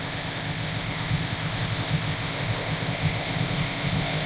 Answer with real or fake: fake